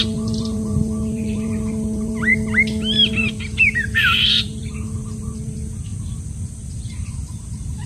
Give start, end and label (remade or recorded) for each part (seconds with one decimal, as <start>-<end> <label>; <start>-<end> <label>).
0.0-2.3 remade; 2.3-3.1 recorded; 3.1-5.9 remade; 5.9-6.6 recorded; 6.6-7.9 remade